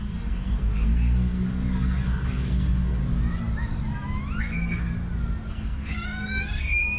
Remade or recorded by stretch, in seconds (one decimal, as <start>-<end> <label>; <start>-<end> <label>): 0.0-3.0 remade; 3.0-4.4 recorded; 4.4-4.9 remade; 4.9-5.5 recorded; 5.5-7.0 remade